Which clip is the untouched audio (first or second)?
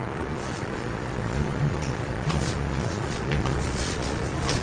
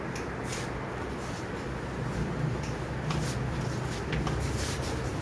second